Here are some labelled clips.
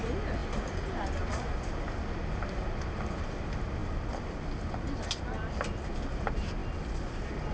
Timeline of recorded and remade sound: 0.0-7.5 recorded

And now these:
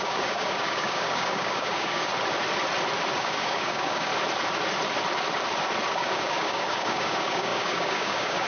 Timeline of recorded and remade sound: 0.0-2.1 remade; 2.1-3.2 recorded; 3.2-4.1 remade; 4.1-5.9 recorded; 5.9-8.5 remade